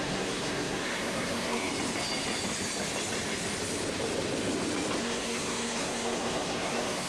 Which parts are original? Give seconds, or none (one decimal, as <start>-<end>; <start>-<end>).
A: 1.7-5.0